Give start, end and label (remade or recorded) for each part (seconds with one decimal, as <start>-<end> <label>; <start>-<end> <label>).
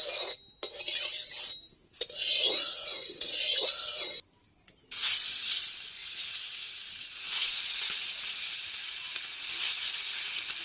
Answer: 0.0-1.8 recorded; 1.8-3.7 remade; 3.7-6.0 recorded; 6.0-9.4 remade; 9.4-10.6 recorded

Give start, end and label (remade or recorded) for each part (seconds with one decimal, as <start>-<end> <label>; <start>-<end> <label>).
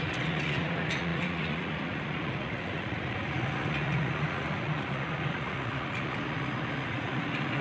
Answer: 0.0-7.6 remade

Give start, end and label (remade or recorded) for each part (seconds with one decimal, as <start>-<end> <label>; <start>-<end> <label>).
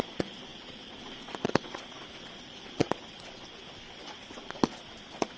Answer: 0.0-5.4 remade